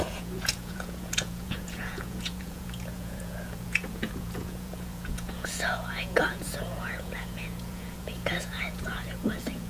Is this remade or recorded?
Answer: remade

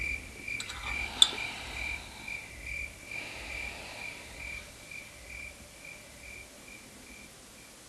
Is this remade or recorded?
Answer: recorded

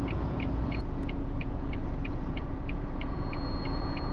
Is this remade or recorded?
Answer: remade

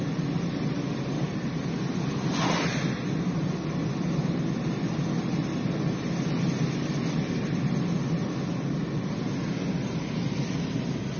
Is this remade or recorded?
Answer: recorded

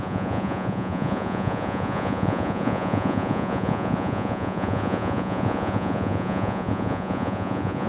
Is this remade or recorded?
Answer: remade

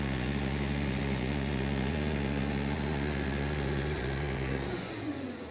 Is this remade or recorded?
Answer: remade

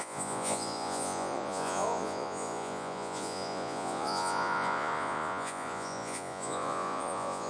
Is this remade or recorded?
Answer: remade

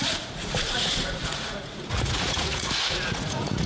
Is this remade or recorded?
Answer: remade